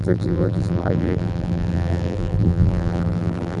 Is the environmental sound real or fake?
fake